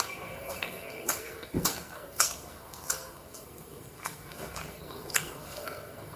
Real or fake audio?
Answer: fake